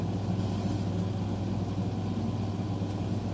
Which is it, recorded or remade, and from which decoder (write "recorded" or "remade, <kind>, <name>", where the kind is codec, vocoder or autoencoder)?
recorded